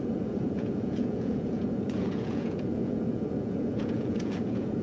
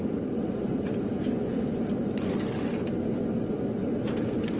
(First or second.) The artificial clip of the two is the first